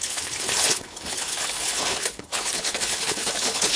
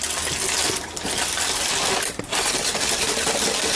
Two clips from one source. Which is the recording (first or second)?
second